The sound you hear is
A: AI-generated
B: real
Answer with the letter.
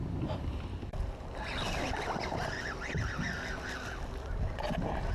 B